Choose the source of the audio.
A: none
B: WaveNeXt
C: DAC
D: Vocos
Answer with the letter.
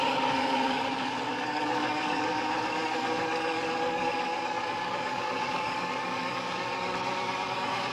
C